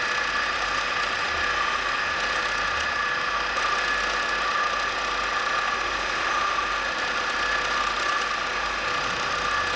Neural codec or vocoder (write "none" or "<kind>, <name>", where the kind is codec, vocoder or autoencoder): none